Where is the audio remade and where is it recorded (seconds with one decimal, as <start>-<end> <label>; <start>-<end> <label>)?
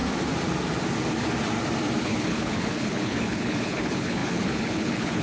0.0-2.0 recorded; 2.0-5.2 remade